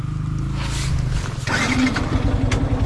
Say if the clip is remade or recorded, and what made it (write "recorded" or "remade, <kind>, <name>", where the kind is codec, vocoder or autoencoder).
recorded